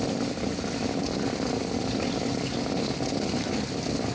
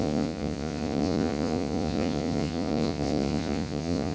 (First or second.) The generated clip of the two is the second